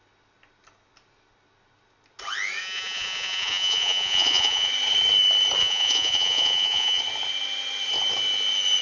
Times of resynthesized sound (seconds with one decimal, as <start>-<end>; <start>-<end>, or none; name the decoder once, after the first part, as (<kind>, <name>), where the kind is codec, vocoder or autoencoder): 2.6-4.7 (vocoder, Vocos); 5.6-7.0